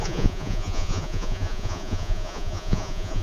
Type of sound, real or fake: fake